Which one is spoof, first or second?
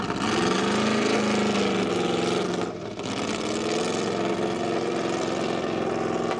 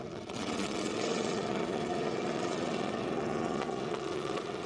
second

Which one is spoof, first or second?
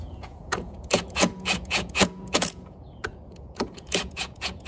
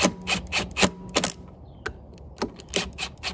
first